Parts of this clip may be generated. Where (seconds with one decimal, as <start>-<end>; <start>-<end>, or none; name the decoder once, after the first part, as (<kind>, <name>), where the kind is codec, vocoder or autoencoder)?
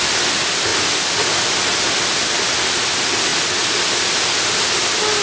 none